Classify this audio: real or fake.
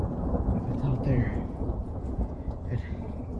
fake